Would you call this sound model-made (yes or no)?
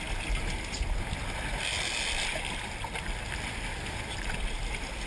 no